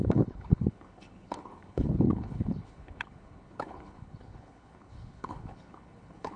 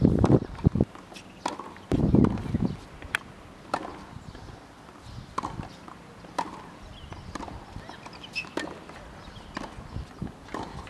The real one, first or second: second